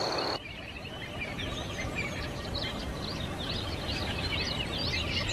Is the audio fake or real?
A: real